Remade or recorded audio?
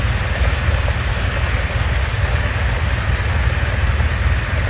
recorded